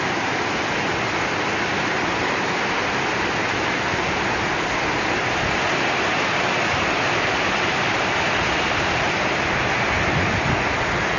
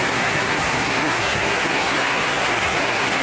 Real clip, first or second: first